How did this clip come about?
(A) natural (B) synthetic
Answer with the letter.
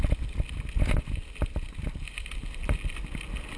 A